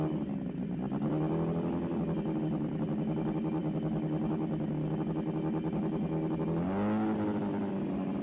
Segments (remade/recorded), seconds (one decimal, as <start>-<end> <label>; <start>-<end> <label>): 0.0-8.2 recorded